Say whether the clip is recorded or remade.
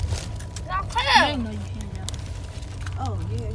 recorded